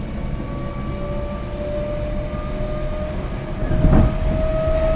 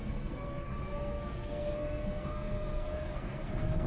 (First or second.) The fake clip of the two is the second